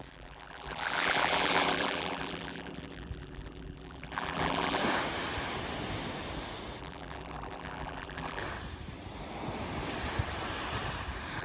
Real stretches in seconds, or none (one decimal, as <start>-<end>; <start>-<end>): 4.8-6.8; 8.4-11.4